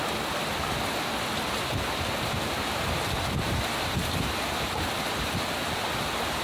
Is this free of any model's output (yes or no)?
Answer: yes